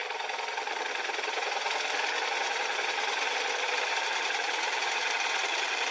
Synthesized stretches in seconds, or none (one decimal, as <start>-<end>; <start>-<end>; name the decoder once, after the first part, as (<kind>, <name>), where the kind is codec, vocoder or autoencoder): 3.5-5.9 (vocoder, BigVGAN v2)